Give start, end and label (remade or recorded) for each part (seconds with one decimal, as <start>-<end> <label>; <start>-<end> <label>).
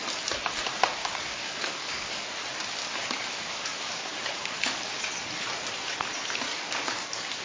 0.0-1.0 recorded; 1.0-2.3 remade; 2.3-2.8 recorded; 2.8-5.0 remade; 5.0-6.5 recorded; 6.5-7.4 remade